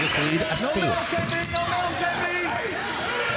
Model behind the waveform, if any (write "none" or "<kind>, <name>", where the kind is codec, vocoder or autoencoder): none